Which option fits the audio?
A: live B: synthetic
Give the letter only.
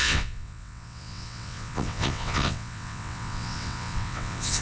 B